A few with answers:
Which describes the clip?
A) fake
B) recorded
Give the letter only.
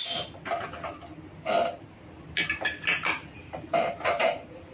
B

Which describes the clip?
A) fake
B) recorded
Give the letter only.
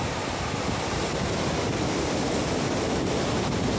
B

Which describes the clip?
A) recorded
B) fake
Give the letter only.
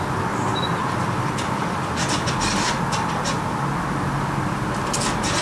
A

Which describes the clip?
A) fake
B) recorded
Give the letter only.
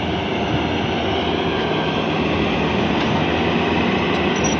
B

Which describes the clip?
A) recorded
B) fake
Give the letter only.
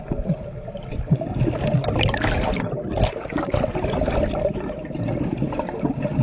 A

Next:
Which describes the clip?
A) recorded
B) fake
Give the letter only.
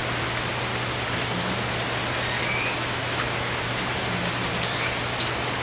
A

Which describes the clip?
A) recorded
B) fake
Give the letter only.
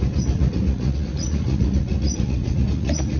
B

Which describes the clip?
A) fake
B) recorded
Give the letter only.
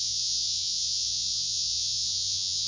A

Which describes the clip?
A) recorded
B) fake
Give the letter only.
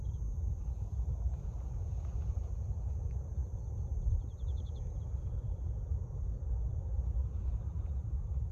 B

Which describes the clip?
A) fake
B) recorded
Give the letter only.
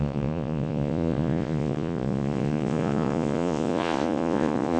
A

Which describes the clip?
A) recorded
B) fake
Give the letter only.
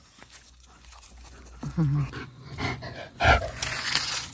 B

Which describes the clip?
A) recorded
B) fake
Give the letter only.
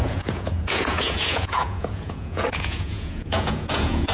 B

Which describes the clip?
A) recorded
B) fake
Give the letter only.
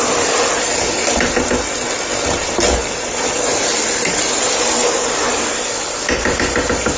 A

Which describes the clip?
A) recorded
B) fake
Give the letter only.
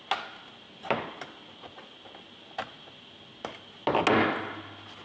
A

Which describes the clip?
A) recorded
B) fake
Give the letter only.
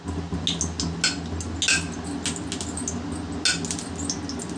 A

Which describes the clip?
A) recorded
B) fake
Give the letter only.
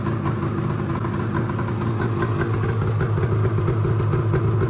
A